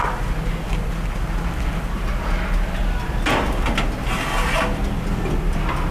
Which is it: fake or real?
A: real